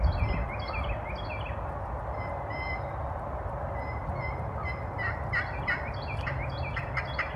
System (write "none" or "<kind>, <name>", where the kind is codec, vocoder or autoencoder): none